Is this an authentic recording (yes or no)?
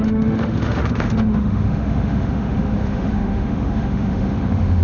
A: no